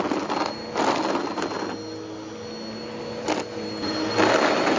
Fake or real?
real